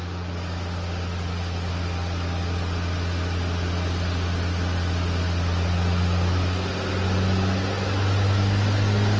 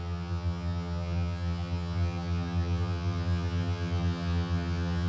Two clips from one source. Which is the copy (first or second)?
second